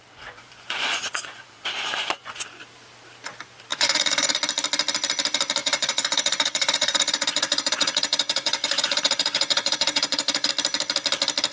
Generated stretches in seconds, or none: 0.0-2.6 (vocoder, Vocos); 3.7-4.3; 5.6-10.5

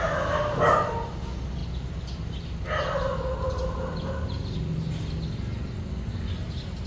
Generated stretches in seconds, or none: none

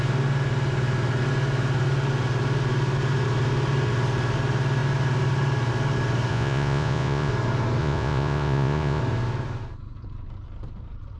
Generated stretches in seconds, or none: 6.3-7.3 (vocoder, Vocos); 7.8-9.0

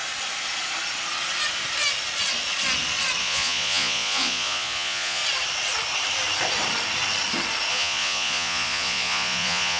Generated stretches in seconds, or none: 3.2-5.2 (vocoder, Vocos); 7.7-9.8

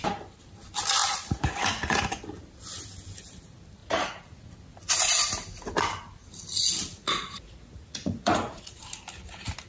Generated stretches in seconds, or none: 1.0-2.0 (vocoder, Vocos); 3.8-4.5; 6.9-8.8

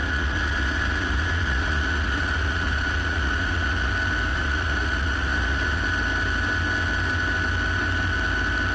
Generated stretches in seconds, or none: 0.0-3.9 (vocoder, Vocos); 4.3-5.8

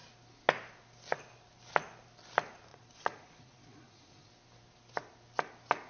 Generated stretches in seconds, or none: 2.7-4.3 (vocoder, Vocos)

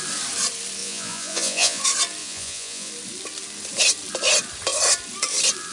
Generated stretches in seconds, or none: 0.8-1.8 (vocoder, Vocos); 2.2-2.9